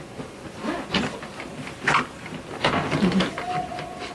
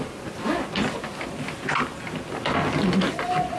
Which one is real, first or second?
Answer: second